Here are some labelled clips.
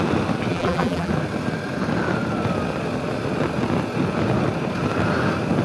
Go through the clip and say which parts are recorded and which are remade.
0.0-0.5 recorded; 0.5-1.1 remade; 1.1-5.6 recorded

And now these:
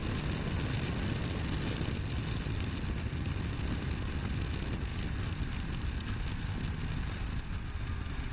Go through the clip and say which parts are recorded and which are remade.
0.0-8.3 recorded

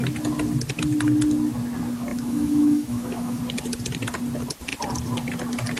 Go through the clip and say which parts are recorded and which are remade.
0.0-2.1 recorded; 2.1-3.4 remade; 3.4-5.8 recorded